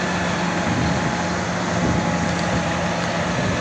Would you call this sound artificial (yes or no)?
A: no